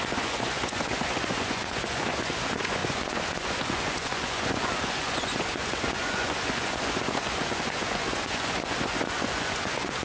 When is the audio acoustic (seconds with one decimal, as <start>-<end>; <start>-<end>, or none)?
none